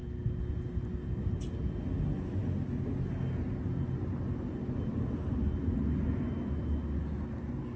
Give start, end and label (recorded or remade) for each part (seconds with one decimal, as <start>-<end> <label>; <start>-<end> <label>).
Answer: 0.0-7.8 recorded